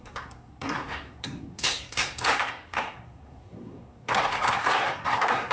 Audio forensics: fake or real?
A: fake